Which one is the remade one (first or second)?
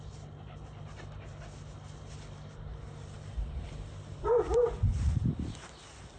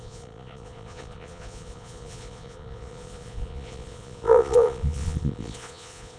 second